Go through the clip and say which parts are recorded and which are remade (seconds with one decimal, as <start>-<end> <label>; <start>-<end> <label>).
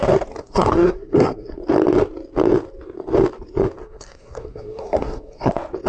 0.0-0.4 recorded; 0.4-1.6 remade; 1.6-3.8 recorded; 3.8-5.5 remade; 5.5-5.9 recorded